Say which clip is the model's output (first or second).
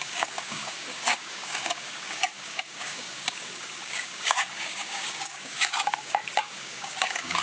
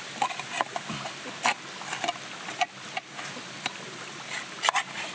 first